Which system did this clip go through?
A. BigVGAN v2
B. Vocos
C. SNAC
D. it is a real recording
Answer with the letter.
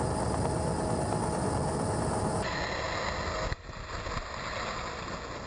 D